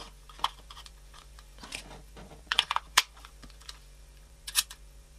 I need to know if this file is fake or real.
fake